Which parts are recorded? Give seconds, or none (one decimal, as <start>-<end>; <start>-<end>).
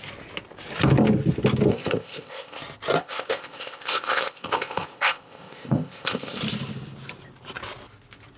0.0-1.7; 2.6-3.0; 6.4-8.4